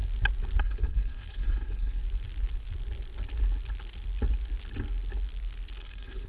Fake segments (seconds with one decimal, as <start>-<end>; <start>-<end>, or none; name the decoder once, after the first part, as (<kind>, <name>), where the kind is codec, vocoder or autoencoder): 0.6-2.0 (codec, HILCodec); 5.8-6.3